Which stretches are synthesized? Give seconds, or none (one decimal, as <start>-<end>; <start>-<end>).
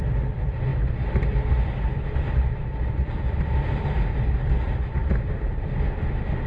none